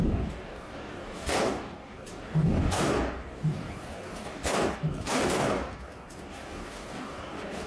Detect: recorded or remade remade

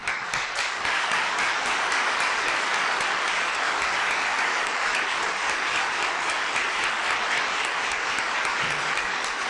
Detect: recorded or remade remade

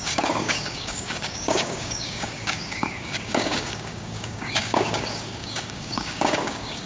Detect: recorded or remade remade